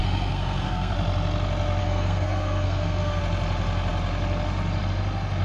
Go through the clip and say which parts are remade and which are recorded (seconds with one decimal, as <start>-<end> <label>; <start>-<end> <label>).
0.0-0.9 remade; 0.9-1.8 recorded; 1.8-3.2 remade; 3.2-5.4 recorded

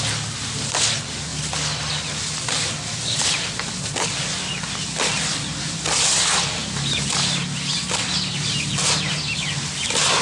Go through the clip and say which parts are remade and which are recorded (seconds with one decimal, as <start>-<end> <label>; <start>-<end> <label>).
0.0-10.2 recorded

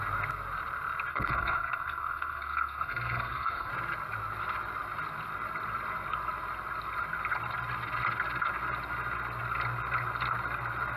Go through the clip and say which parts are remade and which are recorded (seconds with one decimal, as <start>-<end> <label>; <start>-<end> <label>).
0.0-1.1 recorded; 1.1-3.7 remade; 3.7-11.0 recorded